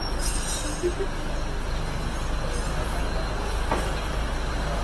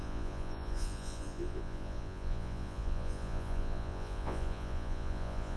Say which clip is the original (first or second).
first